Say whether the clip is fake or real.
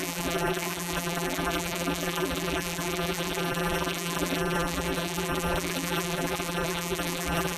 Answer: fake